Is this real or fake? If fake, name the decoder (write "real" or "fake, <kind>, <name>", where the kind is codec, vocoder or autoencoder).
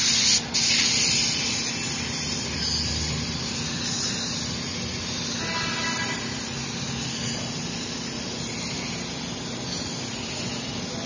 real